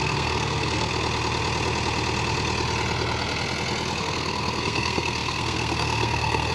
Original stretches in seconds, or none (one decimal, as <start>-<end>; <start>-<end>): 0.9-4.0